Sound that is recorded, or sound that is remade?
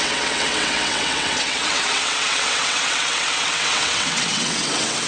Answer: remade